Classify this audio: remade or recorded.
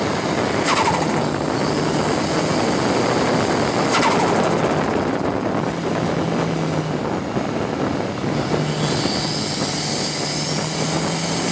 recorded